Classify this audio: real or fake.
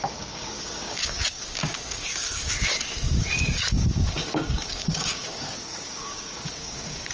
fake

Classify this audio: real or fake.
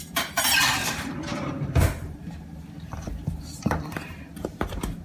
fake